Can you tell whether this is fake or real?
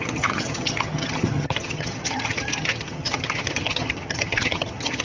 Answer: fake